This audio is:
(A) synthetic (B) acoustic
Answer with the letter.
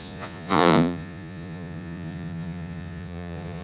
A